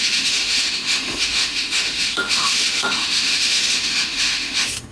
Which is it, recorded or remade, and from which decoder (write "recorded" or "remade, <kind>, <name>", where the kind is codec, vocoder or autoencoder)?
remade, autoencoder, DAC-VAE